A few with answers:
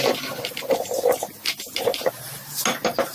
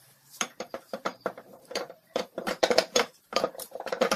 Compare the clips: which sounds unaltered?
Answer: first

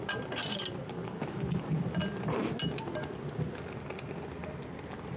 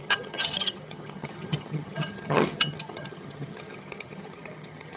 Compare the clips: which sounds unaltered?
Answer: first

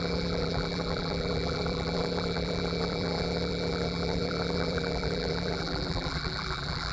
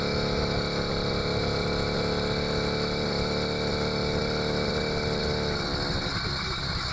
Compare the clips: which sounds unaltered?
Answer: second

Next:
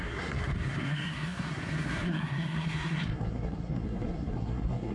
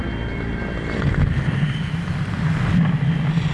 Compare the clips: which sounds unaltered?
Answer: second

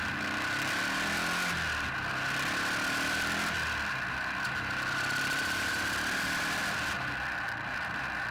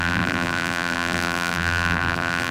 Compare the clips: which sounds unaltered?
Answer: first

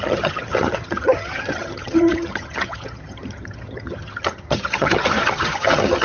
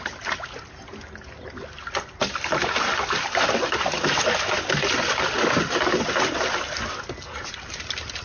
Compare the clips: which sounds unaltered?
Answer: second